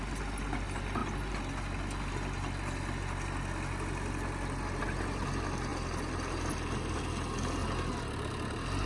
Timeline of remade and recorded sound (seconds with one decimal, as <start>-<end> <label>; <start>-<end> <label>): 0.0-5.7 recorded; 5.7-7.0 remade; 7.0-8.9 recorded